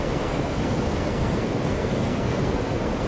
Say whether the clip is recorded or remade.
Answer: remade